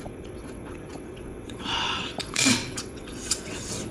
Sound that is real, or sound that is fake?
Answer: fake